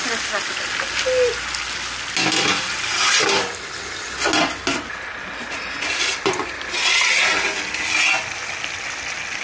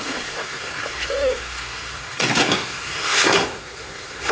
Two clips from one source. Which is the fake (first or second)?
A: second